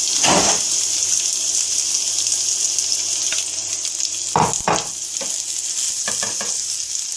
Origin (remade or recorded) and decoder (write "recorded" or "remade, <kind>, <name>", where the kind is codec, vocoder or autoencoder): recorded